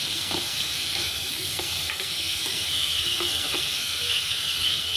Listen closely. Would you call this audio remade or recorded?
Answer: remade